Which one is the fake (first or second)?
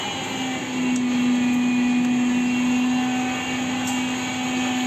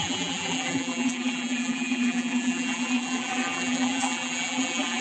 second